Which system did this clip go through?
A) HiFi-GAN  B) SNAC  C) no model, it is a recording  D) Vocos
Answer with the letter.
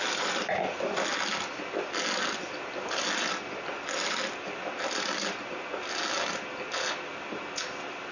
C